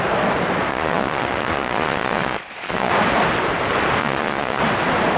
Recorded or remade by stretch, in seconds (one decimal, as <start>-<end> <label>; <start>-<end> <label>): 0.0-0.7 recorded; 0.7-2.9 remade; 2.9-4.0 recorded; 4.0-4.6 remade; 4.6-5.2 recorded